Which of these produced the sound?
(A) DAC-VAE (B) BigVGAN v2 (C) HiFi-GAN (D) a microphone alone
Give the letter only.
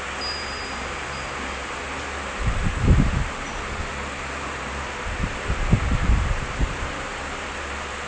B